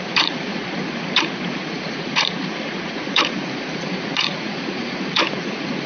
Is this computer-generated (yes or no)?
yes